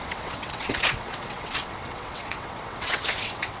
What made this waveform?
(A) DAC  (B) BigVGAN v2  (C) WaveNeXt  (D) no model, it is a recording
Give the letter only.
C